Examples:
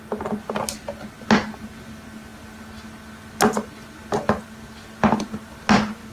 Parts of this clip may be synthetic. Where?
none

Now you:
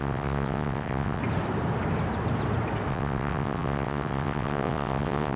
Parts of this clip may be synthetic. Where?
0.0-1.2 (vocoder, WaveNeXt); 2.9-5.4

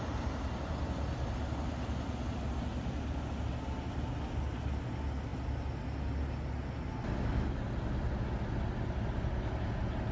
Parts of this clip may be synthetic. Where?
none

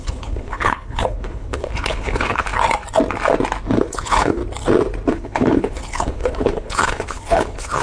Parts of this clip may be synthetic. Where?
0.0-2.5 (codec, HILCodec); 3.9-4.4; 5.1-7.8

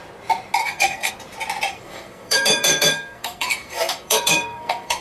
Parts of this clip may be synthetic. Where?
0.6-1.1 (codec, SNAC); 1.7-5.0